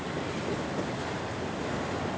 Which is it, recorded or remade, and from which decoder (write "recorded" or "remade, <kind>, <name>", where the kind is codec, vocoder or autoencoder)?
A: recorded